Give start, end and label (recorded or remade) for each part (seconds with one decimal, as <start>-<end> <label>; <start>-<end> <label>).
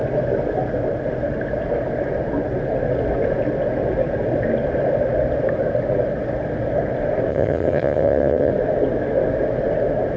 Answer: 0.0-7.3 recorded; 7.3-8.5 remade; 8.5-10.2 recorded